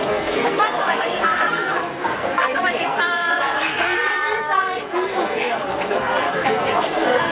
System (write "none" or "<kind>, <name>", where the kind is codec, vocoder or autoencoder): codec, SNAC